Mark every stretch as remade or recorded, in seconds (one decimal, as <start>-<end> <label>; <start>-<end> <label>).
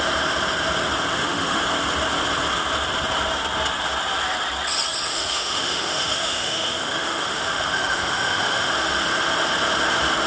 0.0-1.1 recorded; 1.1-1.6 remade; 1.6-5.1 recorded; 5.1-8.7 remade; 8.7-10.3 recorded